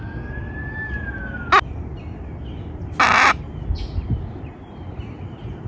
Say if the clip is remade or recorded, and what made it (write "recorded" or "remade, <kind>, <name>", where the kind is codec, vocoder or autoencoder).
recorded